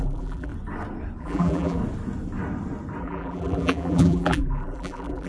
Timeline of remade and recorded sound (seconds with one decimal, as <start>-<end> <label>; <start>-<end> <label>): 0.0-0.5 remade; 0.5-1.2 recorded; 1.2-1.8 remade; 1.8-3.0 recorded; 3.0-5.3 remade